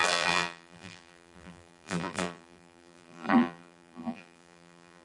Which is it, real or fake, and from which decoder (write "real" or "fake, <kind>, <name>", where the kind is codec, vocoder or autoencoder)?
fake, vocoder, BigVGAN v2